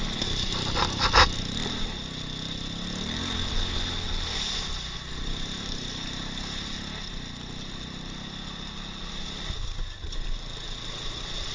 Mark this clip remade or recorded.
recorded